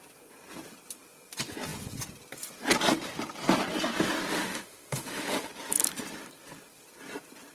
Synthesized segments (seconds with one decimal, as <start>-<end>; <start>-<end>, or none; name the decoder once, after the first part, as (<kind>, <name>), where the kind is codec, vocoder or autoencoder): 4.3-5.5 (autoencoder, DAC-VAE)